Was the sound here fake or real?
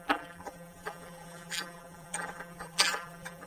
fake